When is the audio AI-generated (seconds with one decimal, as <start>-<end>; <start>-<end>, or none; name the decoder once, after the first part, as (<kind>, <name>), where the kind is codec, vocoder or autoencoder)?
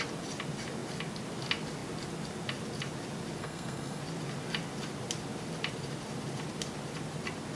3.4-4.0 (codec, SNAC)